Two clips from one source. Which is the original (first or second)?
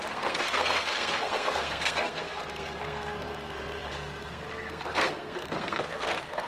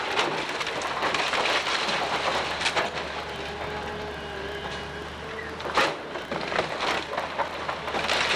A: second